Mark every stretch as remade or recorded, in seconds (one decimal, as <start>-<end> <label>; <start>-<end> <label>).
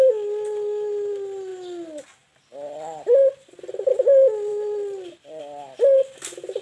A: 0.0-1.5 recorded; 1.5-3.9 remade; 3.9-4.5 recorded; 4.5-5.4 remade; 5.4-6.6 recorded